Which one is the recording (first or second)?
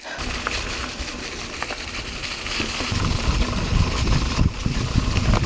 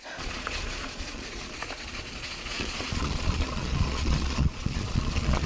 first